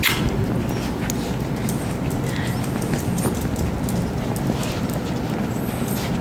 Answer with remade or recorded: recorded